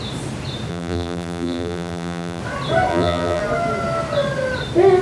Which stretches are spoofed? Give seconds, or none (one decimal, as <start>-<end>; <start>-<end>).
0.7-2.4; 2.9-3.4